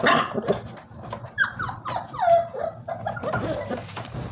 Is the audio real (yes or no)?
yes